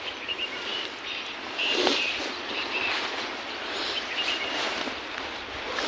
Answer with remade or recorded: recorded